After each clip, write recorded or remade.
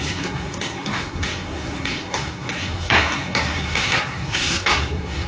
remade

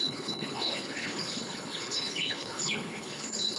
remade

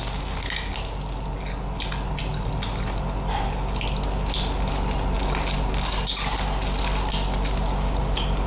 recorded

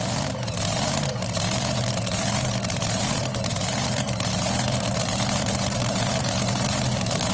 remade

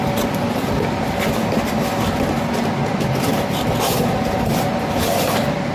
recorded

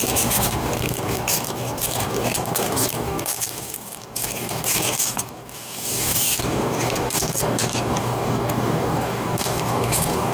remade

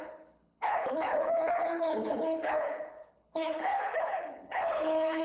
remade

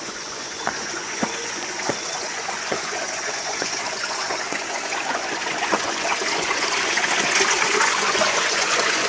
remade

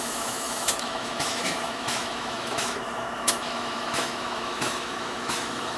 remade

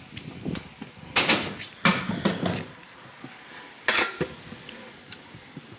recorded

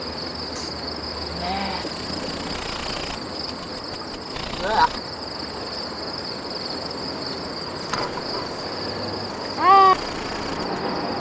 recorded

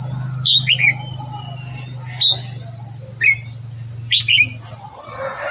recorded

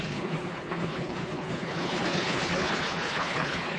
remade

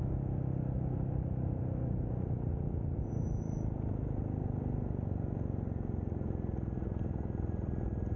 recorded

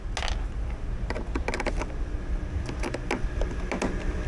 recorded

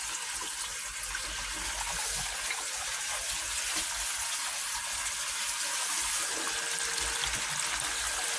recorded